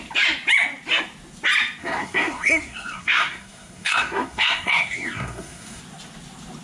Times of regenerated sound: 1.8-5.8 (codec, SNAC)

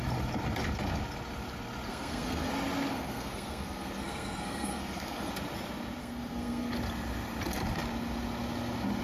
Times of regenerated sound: 1.9-2.5 (codec, SNAC); 2.9-5.3; 6.0-6.7

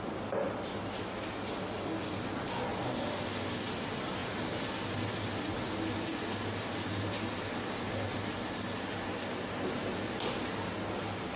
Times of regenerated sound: none

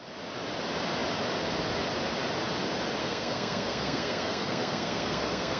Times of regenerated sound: 3.0-5.6 (codec, SNAC)

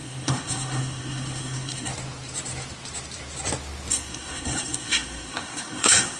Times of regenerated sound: 0.0-1.9 (codec, SNAC); 3.9-6.2

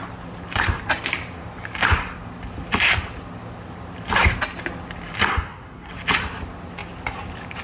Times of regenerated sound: 5.3-5.9 (codec, SNAC)

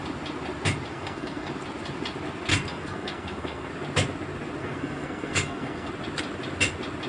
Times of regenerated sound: 0.9-1.5 (codec, SNAC); 2.5-3.7; 4.6-5.9